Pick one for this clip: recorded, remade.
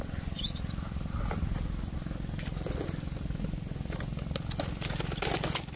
recorded